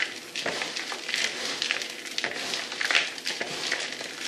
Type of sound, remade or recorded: recorded